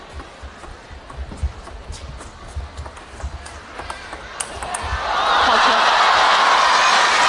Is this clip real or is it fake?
real